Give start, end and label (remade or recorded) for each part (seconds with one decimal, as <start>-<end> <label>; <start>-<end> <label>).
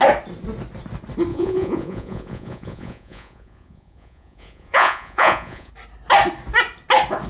0.0-1.3 recorded; 1.3-5.7 remade; 5.7-7.3 recorded